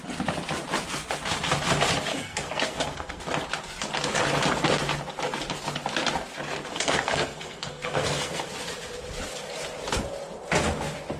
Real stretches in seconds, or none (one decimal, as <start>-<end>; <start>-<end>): 0.0-2.1; 3.2-6.7; 8.5-11.2